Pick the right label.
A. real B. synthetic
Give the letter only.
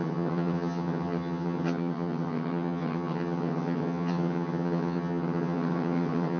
B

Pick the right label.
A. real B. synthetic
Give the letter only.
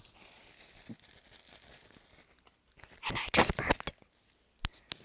A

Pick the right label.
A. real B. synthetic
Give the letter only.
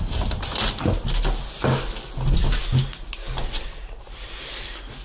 A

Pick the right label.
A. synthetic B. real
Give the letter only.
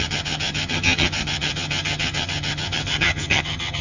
A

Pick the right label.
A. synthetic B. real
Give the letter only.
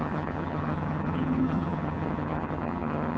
A